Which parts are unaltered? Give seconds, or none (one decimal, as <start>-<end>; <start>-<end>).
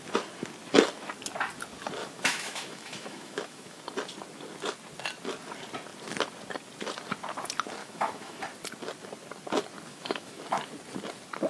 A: 0.0-2.0; 3.8-7.8; 8.4-9.9; 10.4-11.5